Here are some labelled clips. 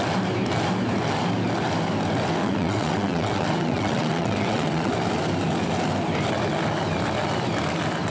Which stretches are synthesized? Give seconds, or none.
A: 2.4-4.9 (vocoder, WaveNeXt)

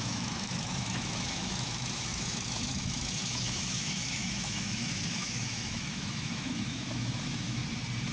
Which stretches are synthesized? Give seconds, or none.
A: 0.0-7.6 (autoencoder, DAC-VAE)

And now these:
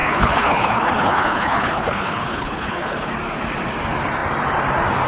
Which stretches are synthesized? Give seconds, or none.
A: 0.0-3.1 (codec, HILCodec)

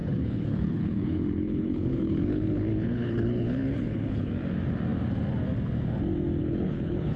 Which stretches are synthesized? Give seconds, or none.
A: 0.0-4.3 (codec, HILCodec); 6.4-7.2

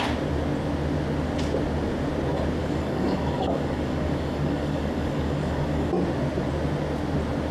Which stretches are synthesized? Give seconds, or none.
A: 2.6-5.9 (codec, DAC)